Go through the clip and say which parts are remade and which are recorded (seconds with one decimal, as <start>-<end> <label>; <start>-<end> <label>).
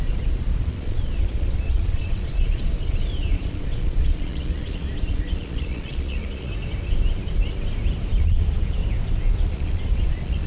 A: 0.0-6.5 remade; 6.5-8.2 recorded; 8.2-8.8 remade; 8.8-9.4 recorded; 9.4-10.5 remade